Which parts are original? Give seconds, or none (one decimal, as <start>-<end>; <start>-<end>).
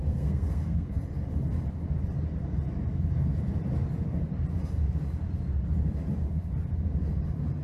1.0-7.6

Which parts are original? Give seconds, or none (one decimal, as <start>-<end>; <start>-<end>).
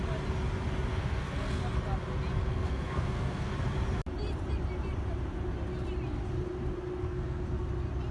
0.0-0.9; 1.6-2.4; 3.5-7.0; 7.6-8.1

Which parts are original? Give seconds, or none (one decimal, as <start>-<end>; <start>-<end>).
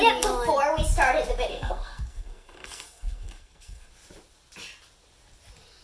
0.0-1.5; 3.9-5.8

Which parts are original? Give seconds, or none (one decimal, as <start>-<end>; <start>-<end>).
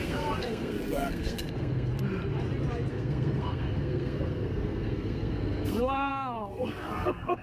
1.9-2.9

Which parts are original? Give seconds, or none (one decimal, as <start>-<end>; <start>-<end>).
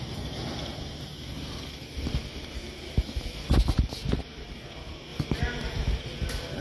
0.0-6.6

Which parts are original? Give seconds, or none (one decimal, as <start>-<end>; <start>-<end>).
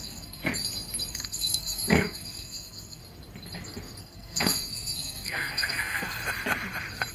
0.4-1.1; 3.0-4.0; 6.2-7.1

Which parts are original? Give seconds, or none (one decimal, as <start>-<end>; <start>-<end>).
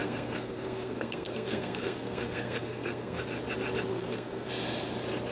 3.2-3.9; 4.5-5.3